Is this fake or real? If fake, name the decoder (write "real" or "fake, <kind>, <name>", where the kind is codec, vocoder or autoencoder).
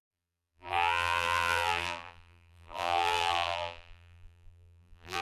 fake, vocoder, BigVGAN v2